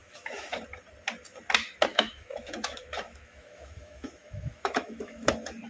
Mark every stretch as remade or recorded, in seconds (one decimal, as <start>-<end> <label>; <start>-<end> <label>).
0.0-0.6 remade; 0.6-1.9 recorded; 1.9-5.3 remade; 5.3-5.7 recorded